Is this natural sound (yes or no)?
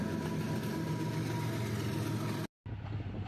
yes